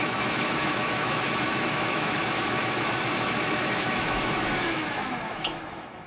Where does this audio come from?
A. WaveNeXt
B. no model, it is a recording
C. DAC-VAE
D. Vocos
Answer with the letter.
C